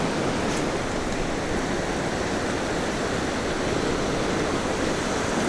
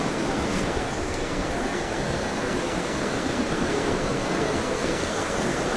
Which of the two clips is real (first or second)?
first